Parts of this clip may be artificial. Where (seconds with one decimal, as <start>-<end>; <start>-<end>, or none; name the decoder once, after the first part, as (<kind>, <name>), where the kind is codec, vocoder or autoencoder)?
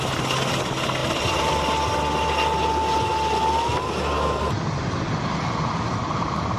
1.0-1.5 (vocoder, BigVGAN v2)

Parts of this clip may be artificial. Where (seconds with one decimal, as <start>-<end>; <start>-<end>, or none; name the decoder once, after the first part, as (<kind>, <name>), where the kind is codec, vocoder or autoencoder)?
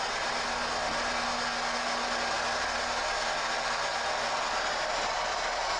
4.9-5.8 (vocoder, BigVGAN v2)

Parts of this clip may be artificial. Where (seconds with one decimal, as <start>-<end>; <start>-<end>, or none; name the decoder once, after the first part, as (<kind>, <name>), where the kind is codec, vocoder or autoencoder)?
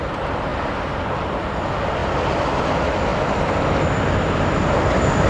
2.0-2.7 (vocoder, BigVGAN v2)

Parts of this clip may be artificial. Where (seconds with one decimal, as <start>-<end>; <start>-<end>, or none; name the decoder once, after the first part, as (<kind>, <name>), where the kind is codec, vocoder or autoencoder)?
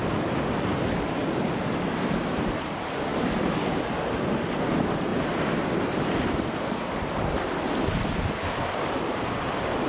0.0-3.1 (vocoder, BigVGAN v2); 4.6-9.9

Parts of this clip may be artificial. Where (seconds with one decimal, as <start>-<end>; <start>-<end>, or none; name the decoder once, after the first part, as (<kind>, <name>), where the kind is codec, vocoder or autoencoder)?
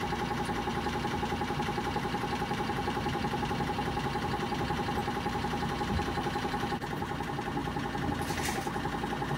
0.7-3.5 (vocoder, BigVGAN v2); 5.0-6.8; 7.6-8.1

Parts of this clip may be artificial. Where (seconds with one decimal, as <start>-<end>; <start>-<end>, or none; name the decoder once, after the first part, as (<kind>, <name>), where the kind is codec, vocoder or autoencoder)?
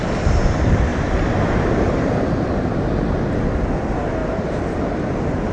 0.9-2.2 (vocoder, BigVGAN v2); 4.2-4.7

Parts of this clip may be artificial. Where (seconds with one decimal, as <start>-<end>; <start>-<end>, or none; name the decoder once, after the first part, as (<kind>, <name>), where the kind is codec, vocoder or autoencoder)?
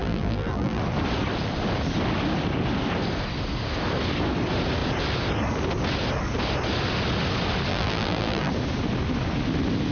0.0-0.8 (vocoder, BigVGAN v2); 7.7-8.5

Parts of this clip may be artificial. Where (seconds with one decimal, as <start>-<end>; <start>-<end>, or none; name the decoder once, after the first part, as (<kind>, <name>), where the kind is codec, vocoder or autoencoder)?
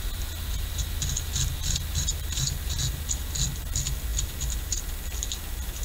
none